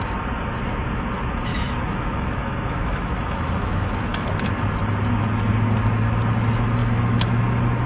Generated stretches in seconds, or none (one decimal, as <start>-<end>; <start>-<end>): 1.5-4.5; 6.8-7.4